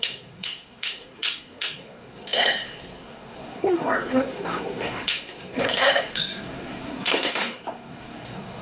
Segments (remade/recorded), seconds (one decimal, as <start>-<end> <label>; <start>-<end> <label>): 0.0-8.6 remade